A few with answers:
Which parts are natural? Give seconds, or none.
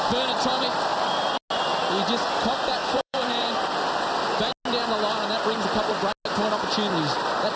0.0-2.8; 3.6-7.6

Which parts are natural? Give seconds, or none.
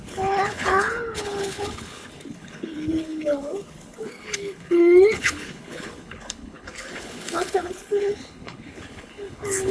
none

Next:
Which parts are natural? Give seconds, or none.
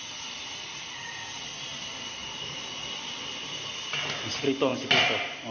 0.0-5.5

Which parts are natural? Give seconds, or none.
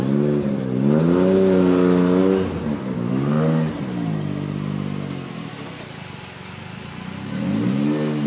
0.0-8.3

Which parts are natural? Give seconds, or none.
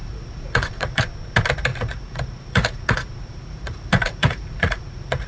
1.0-1.7